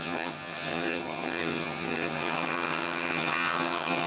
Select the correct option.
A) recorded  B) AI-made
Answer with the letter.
B